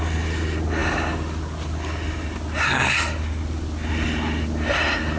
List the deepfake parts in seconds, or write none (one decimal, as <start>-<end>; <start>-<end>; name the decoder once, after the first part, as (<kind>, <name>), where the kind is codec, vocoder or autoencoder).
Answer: none